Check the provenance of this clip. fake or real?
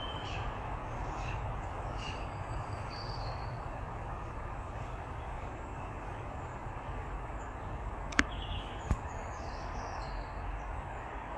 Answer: fake